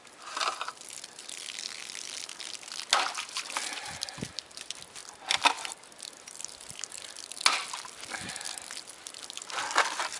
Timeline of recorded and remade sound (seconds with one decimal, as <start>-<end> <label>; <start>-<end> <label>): 0.0-10.2 recorded